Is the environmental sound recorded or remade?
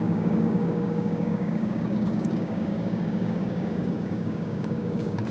remade